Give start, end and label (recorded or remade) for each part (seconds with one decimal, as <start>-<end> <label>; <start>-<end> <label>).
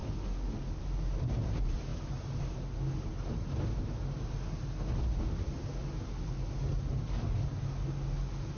0.0-8.6 recorded